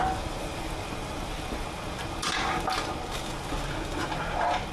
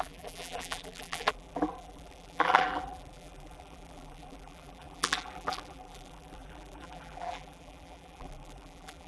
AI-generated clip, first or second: second